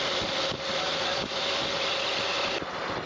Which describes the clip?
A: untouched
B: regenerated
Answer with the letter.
A